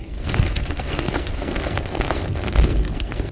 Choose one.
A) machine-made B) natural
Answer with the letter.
A